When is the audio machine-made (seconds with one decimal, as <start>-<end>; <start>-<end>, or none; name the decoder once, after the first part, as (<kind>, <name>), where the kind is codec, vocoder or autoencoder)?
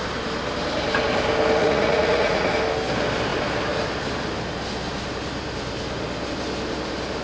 1.6-2.5 (vocoder, Vocos)